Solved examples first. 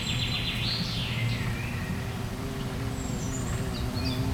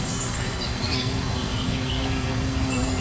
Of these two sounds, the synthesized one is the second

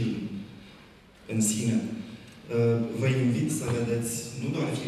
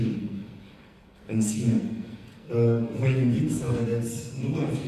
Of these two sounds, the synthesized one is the second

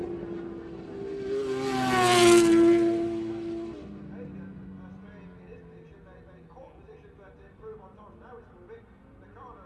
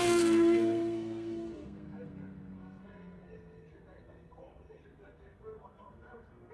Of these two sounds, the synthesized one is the second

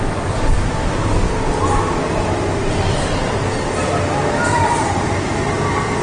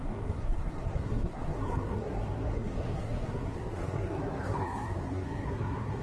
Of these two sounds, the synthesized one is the second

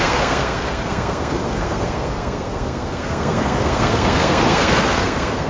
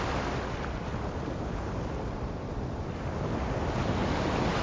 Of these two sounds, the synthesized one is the first